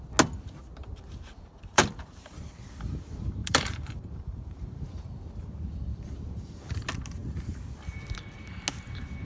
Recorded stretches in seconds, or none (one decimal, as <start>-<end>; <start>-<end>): 0.0-0.8; 2.4-3.4; 5.0-5.9; 6.8-9.2